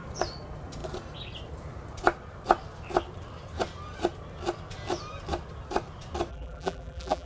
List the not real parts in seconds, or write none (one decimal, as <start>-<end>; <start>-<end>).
6.3-7.3